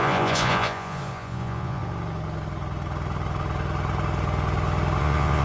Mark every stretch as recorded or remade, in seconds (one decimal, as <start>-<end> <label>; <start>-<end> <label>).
0.0-1.8 remade; 1.8-5.0 recorded; 5.0-5.4 remade